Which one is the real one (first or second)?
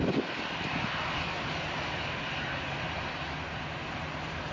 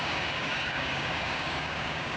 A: first